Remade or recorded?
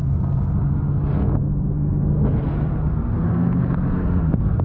remade